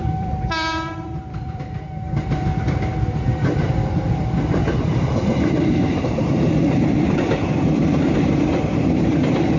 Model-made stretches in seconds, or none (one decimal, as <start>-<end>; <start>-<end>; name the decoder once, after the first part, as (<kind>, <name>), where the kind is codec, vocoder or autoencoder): 0.0-9.6 (vocoder, BigVGAN v2)